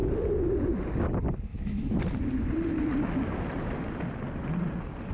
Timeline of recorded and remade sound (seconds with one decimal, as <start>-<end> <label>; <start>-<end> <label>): 0.0-1.5 recorded; 1.5-2.0 remade; 2.0-5.1 recorded